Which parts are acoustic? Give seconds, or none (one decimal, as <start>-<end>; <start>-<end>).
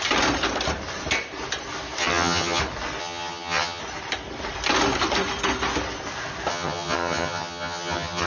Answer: 0.0-2.0; 2.6-3.0; 3.8-6.5